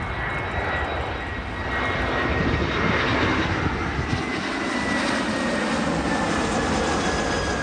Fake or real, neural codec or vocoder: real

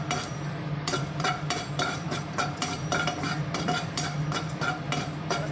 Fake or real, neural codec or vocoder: fake, vocoder, BigVGAN v2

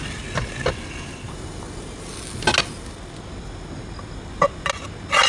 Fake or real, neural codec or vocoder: real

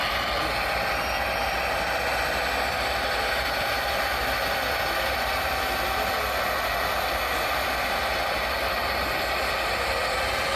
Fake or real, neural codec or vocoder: real